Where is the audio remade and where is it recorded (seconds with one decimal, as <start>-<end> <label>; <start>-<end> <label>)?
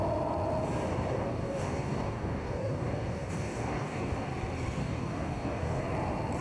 0.0-0.9 recorded; 0.9-4.3 remade; 4.3-4.8 recorded; 4.8-5.8 remade; 5.8-6.4 recorded